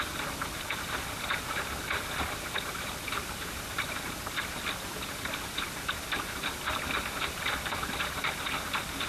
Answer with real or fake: fake